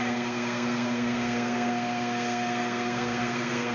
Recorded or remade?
remade